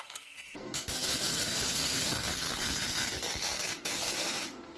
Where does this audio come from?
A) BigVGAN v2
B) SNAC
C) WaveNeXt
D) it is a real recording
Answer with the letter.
B